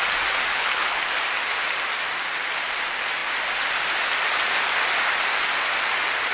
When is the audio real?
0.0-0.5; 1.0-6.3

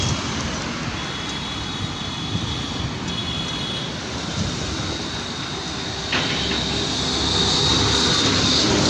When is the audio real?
0.0-8.9

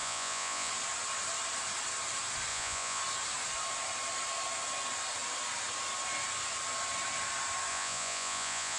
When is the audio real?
0.7-2.5; 3.0-7.7

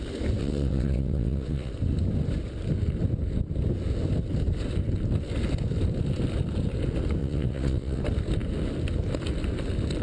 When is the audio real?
0.0-0.4; 1.7-7.2; 8.0-10.0

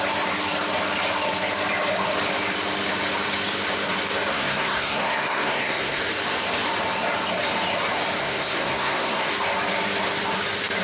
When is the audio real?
0.0-4.3; 6.0-8.2; 9.3-10.8

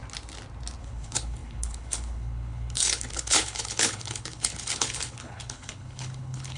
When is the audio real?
0.0-0.8